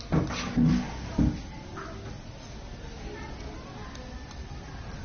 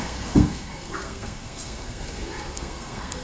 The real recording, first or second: first